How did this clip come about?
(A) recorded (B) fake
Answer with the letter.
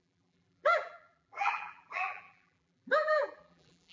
B